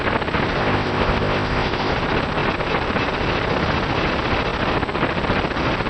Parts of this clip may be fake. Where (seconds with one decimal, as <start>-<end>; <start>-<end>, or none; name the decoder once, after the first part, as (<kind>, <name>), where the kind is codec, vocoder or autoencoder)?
0.6-1.9 (codec, ZipCodec)